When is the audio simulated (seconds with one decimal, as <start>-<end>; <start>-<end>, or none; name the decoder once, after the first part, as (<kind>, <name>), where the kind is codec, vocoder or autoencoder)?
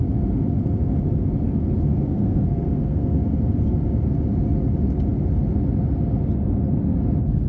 1.9-3.2 (codec, SNAC)